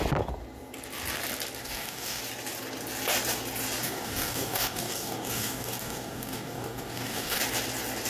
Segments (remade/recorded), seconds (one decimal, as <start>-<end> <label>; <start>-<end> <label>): 0.0-1.6 recorded; 1.6-2.2 remade; 2.2-3.8 recorded; 3.8-7.4 remade; 7.4-8.1 recorded